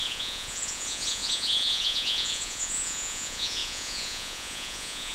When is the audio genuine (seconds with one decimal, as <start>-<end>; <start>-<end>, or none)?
none